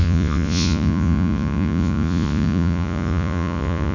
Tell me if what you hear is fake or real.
fake